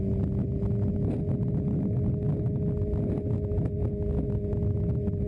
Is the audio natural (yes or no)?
yes